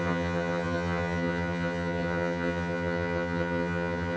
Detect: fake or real fake